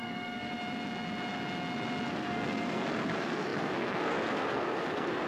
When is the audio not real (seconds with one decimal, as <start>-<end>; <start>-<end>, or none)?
0.0-0.5; 2.1-5.3